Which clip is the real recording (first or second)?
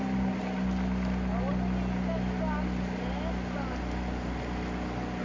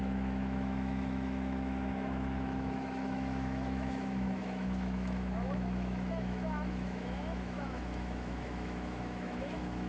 first